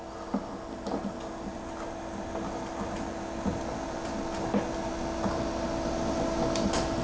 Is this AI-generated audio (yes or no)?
no